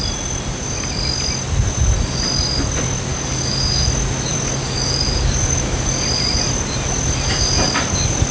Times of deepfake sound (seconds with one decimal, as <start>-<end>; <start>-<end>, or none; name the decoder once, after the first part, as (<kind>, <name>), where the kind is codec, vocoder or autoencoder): 3.1-3.6 (codec, DAC); 4.6-5.9